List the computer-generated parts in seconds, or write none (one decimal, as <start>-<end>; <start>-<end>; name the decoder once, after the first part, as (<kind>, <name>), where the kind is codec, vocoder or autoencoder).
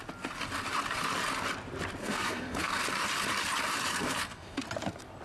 2.0-2.8 (codec, SNAC); 3.9-4.6